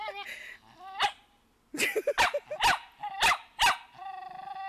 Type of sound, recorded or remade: recorded